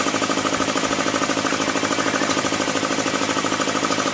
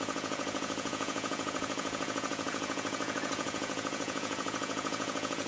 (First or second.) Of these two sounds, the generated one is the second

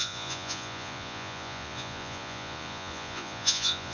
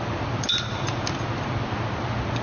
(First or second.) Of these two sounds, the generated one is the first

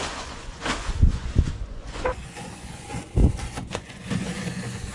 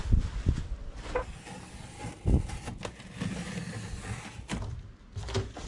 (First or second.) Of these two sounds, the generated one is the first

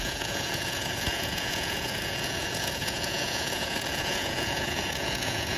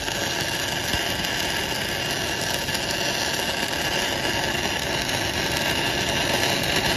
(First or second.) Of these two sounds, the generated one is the first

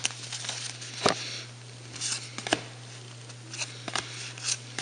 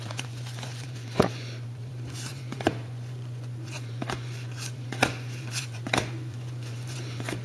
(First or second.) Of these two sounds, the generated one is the second